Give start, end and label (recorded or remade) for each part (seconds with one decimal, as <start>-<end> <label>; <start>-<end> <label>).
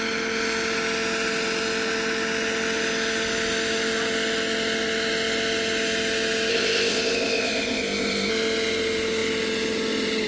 0.0-6.5 recorded; 6.5-8.3 remade; 8.3-10.3 recorded